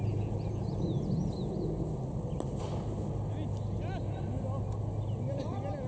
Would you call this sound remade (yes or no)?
no